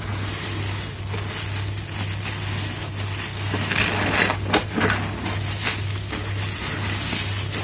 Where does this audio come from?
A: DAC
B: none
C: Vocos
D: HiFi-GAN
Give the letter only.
B